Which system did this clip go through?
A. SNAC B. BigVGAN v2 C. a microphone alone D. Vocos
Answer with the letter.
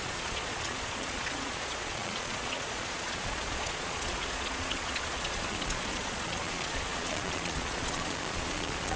D